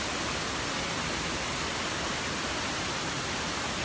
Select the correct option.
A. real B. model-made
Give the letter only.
A